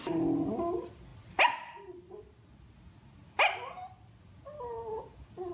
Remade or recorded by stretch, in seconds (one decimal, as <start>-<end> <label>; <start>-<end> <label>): 0.0-5.5 recorded